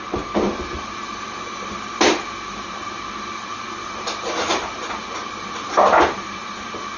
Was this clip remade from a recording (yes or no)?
no